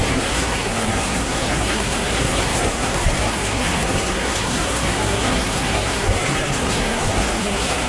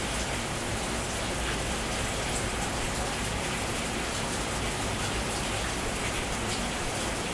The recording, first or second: second